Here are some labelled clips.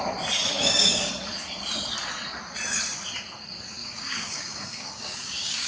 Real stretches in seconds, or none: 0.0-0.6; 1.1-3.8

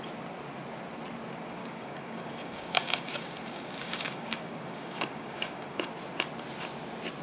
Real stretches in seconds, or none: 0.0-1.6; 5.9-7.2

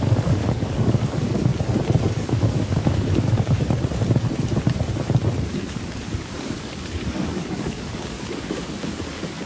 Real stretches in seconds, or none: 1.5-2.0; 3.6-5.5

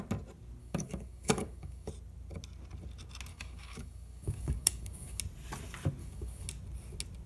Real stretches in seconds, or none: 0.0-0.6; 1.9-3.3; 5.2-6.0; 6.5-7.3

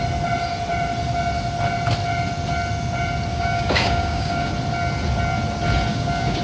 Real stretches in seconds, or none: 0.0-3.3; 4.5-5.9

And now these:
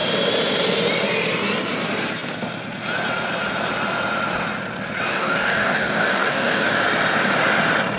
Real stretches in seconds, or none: 0.0-5.1; 6.7-8.0

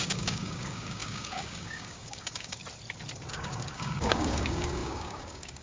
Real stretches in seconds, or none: 2.6-3.3